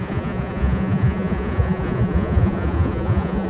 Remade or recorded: remade